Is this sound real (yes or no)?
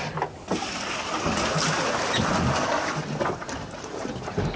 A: yes